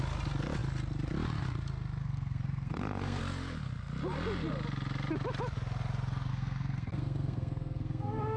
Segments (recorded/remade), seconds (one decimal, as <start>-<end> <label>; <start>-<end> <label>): 0.0-2.0 recorded; 2.0-3.2 remade; 3.2-6.3 recorded; 6.3-8.4 remade